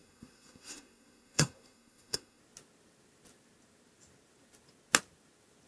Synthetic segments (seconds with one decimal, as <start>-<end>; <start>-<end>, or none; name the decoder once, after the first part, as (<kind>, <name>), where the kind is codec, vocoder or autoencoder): 0.0-2.4 (codec, SNAC)